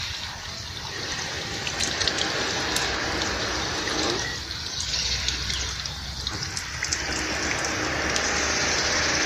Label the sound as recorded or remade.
recorded